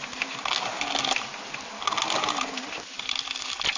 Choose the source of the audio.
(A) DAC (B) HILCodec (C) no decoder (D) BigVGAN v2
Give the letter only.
C